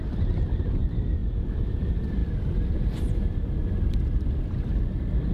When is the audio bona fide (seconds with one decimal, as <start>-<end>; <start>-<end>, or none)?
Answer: 0.0-2.2